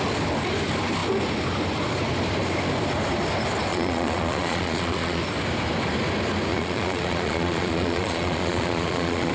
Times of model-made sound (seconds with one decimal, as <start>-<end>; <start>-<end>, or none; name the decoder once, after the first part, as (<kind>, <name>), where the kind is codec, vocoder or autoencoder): 3.7-5.2 (vocoder, Vocos); 6.5-9.3